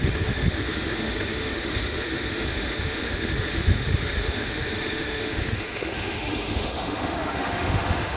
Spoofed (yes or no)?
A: yes